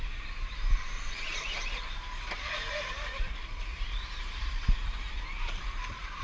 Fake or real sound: fake